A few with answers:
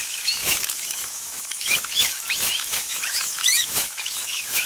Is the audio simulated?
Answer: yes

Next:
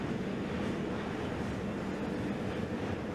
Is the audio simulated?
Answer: no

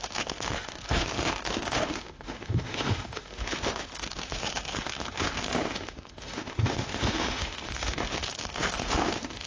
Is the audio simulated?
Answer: yes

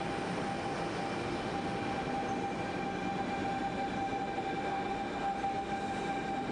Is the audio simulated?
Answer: no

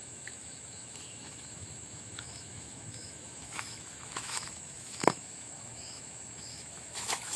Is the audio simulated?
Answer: yes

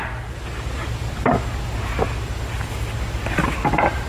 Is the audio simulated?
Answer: no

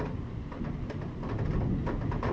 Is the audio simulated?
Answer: no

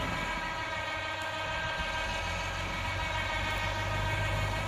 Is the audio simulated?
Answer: no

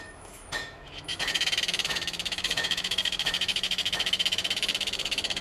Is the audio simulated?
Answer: yes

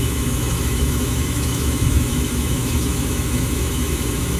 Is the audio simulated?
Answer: yes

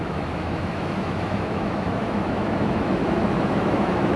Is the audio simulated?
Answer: yes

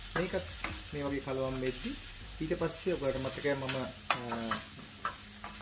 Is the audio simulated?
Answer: no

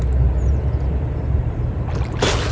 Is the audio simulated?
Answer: no